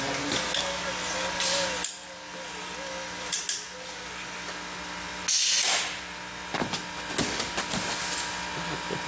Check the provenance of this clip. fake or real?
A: real